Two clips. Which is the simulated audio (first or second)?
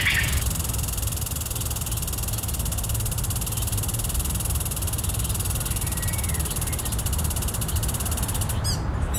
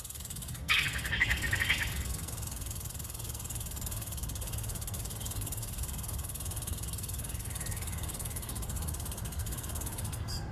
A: second